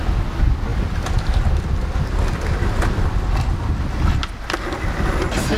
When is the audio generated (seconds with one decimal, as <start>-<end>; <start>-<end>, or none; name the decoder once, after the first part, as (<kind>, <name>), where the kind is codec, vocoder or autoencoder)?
none